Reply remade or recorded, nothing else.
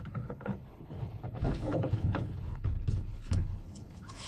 remade